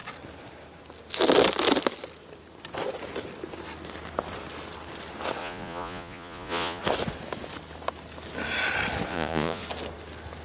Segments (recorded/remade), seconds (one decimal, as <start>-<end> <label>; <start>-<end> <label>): 0.0-5.4 recorded; 5.4-6.8 remade; 6.8-9.1 recorded; 9.1-9.6 remade; 9.6-10.4 recorded

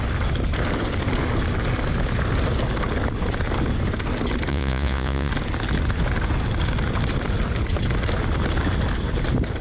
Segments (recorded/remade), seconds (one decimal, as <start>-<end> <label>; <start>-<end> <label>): 0.0-4.5 recorded; 4.5-5.3 remade; 5.3-9.6 recorded

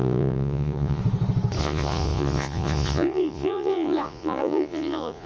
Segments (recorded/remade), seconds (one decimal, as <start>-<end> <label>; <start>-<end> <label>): 0.0-1.0 remade; 1.0-1.6 recorded; 1.6-5.3 remade

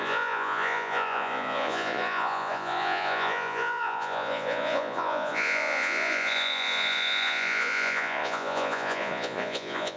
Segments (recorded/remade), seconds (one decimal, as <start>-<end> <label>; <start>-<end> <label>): 0.0-10.0 remade